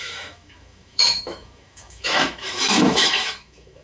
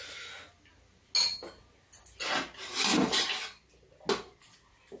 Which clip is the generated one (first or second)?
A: first